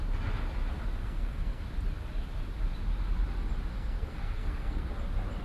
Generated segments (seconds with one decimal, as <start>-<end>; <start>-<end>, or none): 1.0-1.6; 3.7-4.9